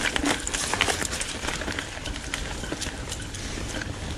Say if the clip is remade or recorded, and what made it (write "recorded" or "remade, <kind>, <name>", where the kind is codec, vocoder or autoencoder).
recorded